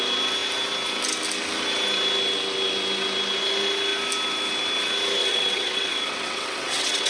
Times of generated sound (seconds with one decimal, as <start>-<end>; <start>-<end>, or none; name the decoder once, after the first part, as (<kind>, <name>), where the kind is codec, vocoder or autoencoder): 5.2-7.1 (vocoder, WaveNeXt)